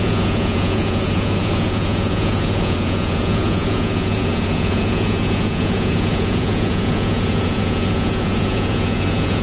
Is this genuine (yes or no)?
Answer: no